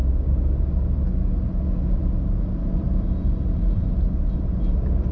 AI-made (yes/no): no